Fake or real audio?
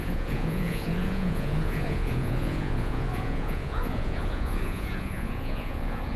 fake